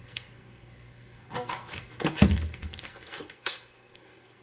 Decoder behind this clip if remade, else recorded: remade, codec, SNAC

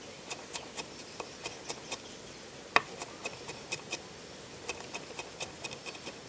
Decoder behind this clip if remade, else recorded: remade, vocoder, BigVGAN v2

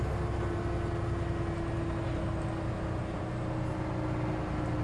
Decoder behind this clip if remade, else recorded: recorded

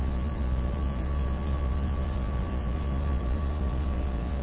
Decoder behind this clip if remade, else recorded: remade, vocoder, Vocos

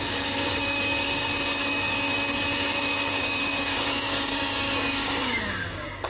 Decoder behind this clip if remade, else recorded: remade, codec, DAC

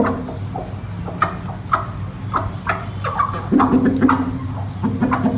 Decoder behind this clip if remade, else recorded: recorded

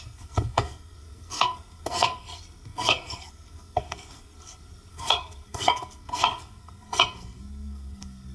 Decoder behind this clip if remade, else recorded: remade, codec, SNAC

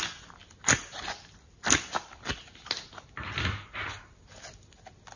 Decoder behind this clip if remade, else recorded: recorded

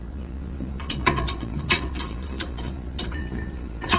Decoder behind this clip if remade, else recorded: remade, vocoder, Vocos